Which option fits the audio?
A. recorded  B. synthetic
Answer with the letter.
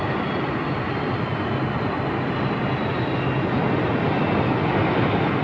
A